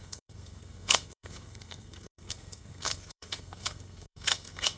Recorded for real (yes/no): no